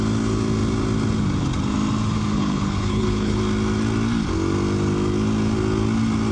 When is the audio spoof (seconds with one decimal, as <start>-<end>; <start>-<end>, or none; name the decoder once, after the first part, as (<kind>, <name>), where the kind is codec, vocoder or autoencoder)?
2.3-3.4 (codec, HILCodec)